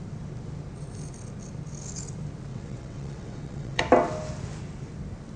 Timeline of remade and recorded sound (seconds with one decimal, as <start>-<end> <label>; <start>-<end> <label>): 0.0-2.5 recorded; 2.5-3.8 remade; 3.8-5.4 recorded